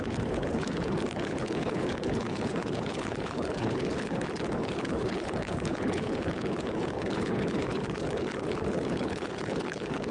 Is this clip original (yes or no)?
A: no